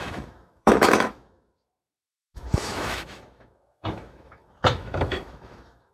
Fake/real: fake